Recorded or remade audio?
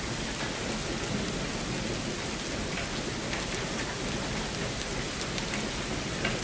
recorded